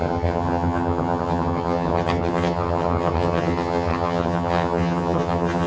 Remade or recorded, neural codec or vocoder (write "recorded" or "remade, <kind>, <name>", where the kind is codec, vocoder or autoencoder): remade, vocoder, HiFi-GAN